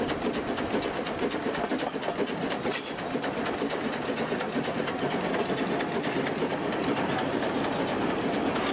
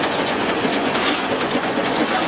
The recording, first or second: first